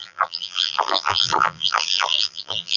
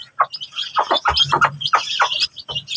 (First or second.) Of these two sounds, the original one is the second